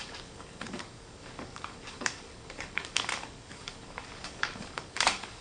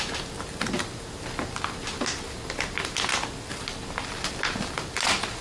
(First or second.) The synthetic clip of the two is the first